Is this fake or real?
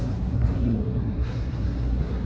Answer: fake